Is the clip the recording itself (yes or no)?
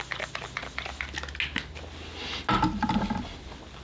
yes